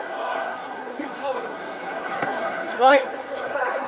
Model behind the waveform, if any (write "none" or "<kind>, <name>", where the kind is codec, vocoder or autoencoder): codec, SNAC